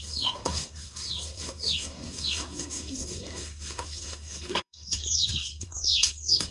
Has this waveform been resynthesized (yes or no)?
yes